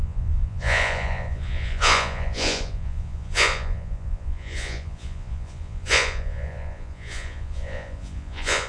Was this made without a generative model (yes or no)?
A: no